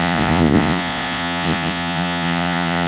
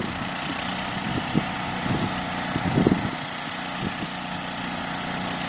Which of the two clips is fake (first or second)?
first